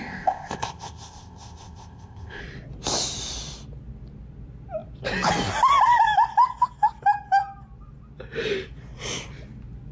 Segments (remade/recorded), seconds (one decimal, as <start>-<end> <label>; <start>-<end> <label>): 0.0-2.4 remade; 2.4-9.9 recorded